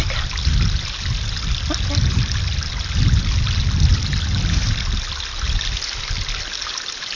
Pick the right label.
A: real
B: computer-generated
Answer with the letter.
A